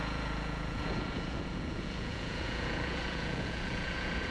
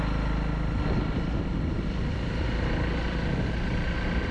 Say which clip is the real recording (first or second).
second